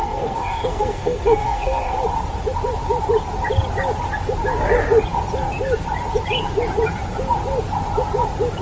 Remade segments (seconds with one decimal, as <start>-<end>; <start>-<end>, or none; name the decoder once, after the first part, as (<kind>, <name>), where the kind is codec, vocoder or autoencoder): 0.0-2.0 (codec, SNAC)